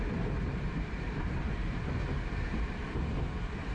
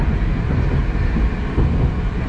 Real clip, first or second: second